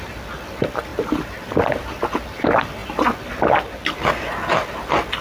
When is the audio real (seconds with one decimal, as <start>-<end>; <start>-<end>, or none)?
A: 0.0-5.2